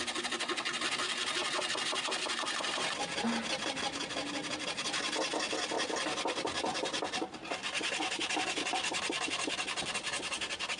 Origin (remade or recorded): recorded